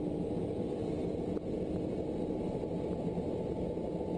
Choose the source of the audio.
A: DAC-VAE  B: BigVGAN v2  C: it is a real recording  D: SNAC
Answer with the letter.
C